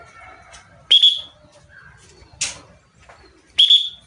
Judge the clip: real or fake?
real